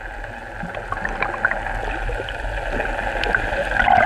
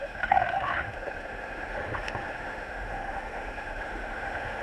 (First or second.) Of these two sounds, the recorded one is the first